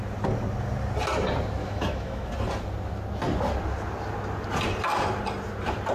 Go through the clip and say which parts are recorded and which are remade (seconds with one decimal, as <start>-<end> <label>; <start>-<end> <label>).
0.0-1.6 recorded; 1.6-2.3 remade; 2.3-5.9 recorded